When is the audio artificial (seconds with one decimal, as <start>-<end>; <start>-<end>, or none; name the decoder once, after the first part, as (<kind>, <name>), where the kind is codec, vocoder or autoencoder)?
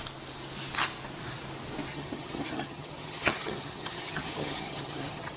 1.9-5.4 (vocoder, HiFi-GAN)